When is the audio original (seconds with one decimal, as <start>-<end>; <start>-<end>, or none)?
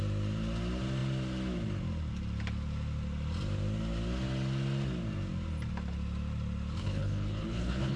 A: 0.0-6.8